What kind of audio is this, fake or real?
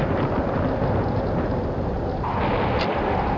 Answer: real